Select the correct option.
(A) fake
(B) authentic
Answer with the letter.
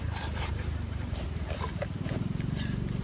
B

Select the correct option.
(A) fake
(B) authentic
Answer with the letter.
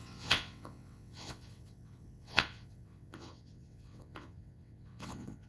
A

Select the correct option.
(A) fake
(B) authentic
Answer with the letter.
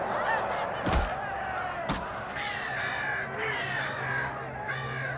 B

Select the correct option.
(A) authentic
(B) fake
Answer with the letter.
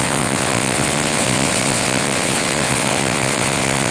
B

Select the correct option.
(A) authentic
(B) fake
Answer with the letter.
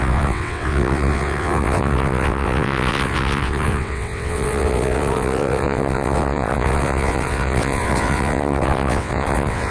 B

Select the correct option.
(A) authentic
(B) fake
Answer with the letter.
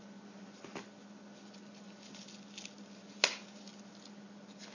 A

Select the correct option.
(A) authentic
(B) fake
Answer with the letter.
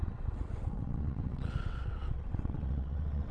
B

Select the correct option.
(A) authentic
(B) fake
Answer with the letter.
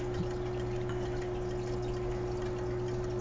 A